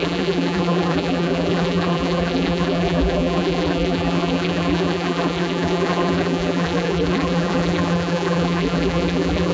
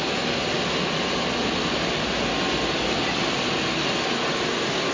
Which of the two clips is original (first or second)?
second